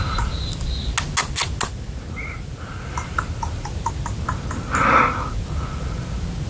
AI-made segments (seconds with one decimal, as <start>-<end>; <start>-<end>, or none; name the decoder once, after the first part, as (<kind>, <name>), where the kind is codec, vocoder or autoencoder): none